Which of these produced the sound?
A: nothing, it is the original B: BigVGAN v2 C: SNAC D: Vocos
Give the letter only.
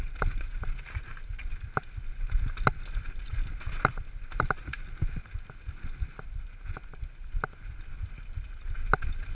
A